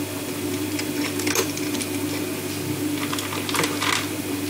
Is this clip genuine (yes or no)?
yes